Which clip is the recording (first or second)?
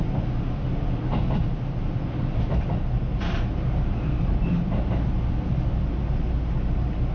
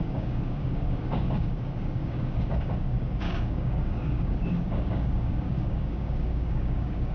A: first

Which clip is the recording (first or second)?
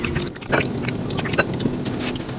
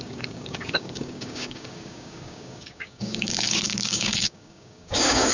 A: first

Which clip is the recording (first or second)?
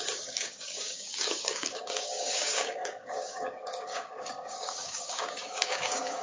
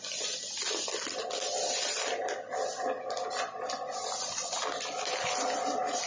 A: second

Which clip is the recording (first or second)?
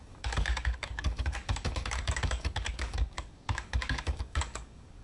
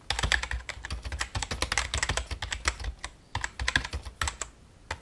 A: second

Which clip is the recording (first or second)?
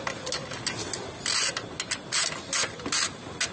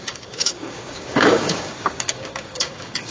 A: first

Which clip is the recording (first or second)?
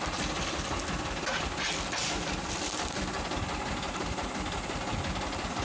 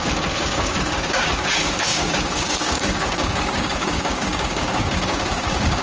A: first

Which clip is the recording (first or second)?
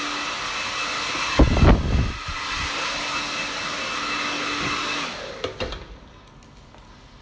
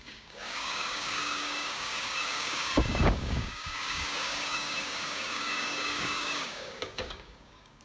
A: first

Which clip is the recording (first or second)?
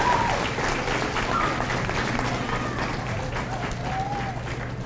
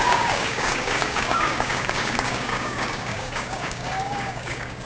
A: first